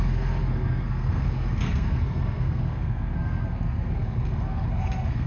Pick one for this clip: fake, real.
fake